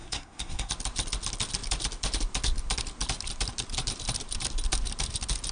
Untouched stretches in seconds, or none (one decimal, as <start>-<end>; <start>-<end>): 0.7-5.5